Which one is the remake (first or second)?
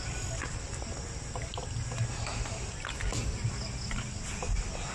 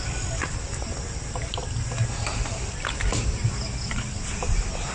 second